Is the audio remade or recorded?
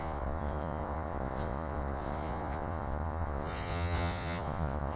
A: remade